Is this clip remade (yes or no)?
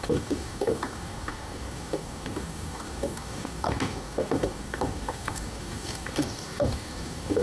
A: yes